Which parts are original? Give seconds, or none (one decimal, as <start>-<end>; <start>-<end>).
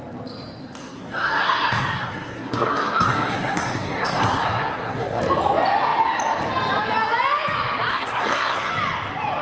0.0-0.8; 5.2-7.9; 8.7-9.4